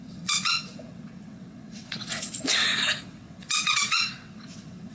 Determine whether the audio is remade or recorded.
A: remade